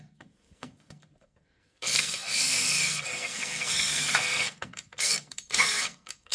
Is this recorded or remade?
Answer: remade